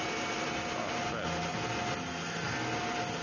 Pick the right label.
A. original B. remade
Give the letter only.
A